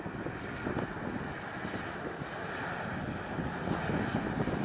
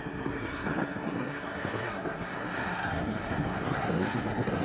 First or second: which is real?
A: first